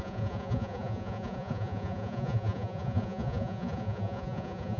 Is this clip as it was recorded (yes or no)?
no